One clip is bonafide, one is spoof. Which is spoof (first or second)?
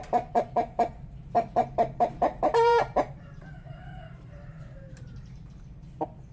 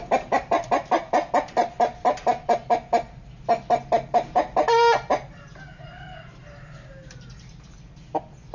first